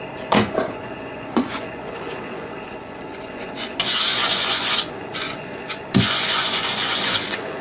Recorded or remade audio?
remade